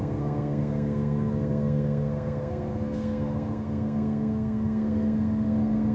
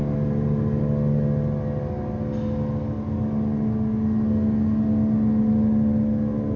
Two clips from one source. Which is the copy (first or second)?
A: first